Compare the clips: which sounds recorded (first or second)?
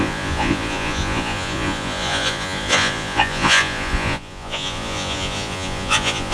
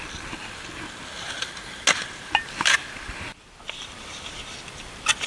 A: second